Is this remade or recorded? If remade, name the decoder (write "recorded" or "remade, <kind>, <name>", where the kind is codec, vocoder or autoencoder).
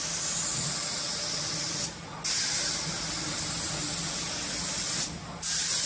recorded